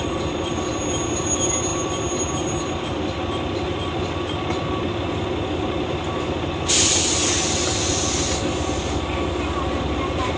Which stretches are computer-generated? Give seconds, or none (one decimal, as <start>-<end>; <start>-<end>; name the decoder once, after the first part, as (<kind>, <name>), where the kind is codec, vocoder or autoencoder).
none